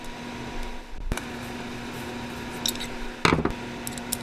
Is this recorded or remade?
recorded